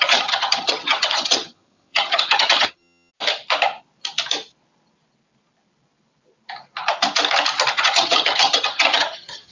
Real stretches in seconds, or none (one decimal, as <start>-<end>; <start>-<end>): 3.1-7.7